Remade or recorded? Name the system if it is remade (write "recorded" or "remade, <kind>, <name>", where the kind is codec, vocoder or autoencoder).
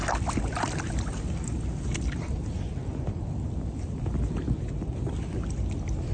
recorded